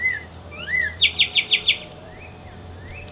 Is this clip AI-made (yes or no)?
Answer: yes